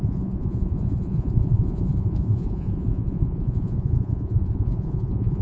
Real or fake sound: fake